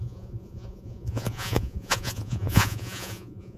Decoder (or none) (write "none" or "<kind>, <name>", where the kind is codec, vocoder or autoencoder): vocoder, Vocos